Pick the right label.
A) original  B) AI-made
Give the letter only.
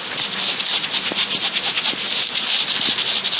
A